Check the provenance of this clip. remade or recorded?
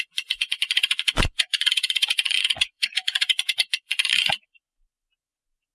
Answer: remade